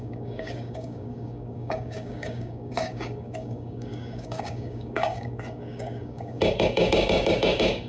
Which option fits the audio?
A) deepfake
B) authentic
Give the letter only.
A